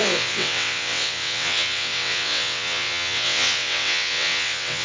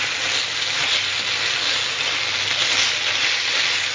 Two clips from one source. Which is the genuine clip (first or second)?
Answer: second